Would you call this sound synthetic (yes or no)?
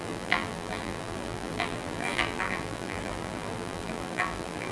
yes